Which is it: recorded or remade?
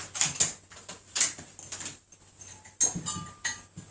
recorded